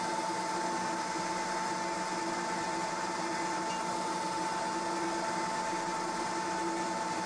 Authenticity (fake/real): real